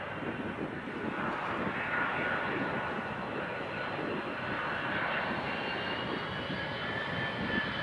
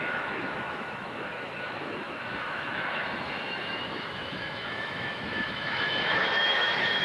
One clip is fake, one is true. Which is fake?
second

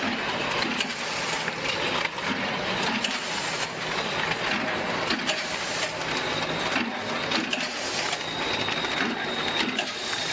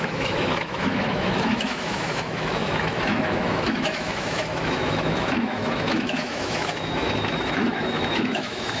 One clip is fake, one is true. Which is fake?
second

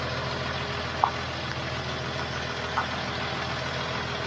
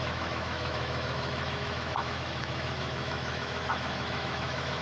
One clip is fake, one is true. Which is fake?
second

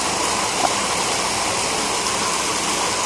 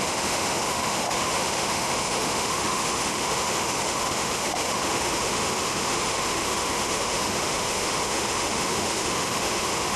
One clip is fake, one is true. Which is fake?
second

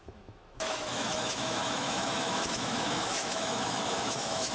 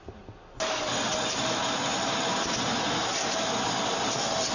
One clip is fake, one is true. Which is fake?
first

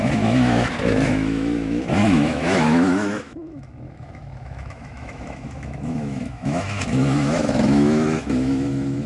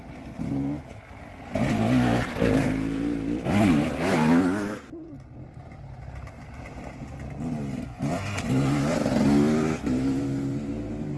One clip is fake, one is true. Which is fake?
first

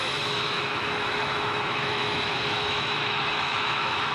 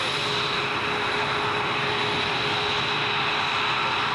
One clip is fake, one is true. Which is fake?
first